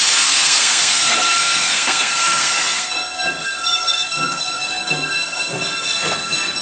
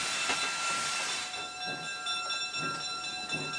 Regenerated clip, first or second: first